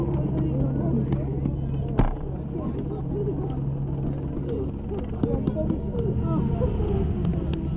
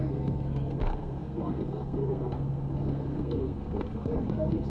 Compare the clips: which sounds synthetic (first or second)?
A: second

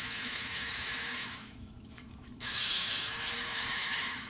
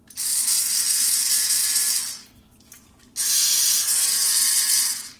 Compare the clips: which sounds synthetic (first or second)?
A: first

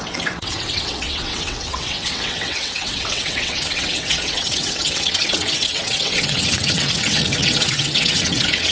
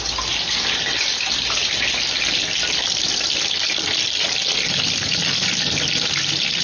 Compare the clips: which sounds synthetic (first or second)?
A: first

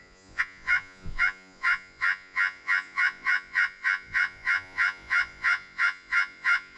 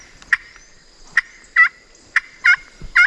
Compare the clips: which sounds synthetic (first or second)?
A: first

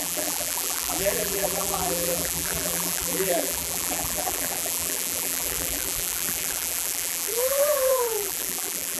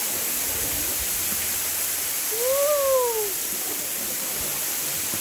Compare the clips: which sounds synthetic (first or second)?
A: first